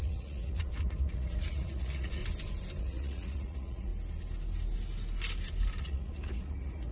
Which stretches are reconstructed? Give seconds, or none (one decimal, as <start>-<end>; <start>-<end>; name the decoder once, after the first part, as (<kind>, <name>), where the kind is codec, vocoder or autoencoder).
0.0-2.2 (vocoder, Vocos); 2.8-3.9; 5.8-6.9